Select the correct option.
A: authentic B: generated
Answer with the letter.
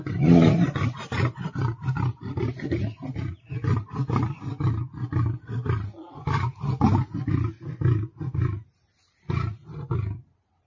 A